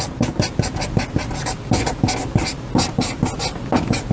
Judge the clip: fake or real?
real